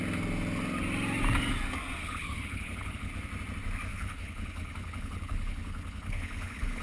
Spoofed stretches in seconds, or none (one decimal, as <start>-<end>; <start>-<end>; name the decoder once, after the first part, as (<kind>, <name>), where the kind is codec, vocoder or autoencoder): 2.0-3.1 (codec, HILCodec); 3.9-6.8